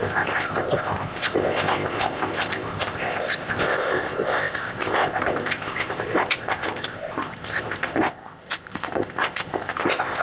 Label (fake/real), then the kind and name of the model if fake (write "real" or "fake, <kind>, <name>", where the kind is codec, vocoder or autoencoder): fake, codec, ZipCodec